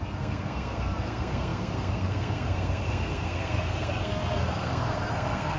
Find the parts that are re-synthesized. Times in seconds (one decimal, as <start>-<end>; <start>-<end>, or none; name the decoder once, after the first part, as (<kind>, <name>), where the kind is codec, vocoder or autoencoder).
0.0-5.6 (codec, SNAC)